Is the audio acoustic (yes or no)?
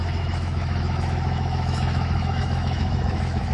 no